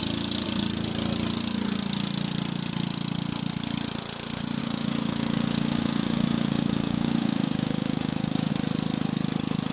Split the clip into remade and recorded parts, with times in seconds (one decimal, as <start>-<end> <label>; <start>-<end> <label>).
0.0-4.6 recorded; 4.6-8.5 remade; 8.5-9.7 recorded